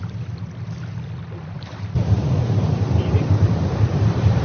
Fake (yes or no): yes